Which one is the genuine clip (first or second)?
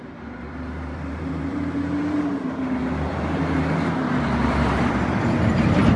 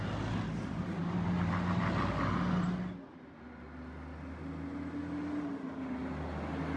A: second